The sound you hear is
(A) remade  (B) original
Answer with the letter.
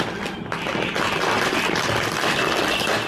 B